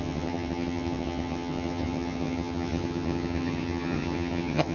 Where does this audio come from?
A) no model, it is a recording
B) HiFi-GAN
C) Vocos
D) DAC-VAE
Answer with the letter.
B